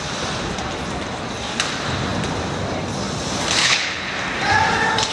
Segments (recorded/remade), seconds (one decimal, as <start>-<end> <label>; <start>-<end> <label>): 0.0-3.6 recorded; 3.6-4.1 remade; 4.1-5.1 recorded